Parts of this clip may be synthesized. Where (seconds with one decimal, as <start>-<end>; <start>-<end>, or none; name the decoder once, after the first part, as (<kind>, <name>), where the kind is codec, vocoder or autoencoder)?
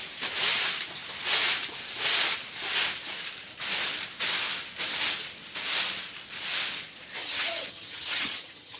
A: 7.2-8.8 (vocoder, HiFi-GAN)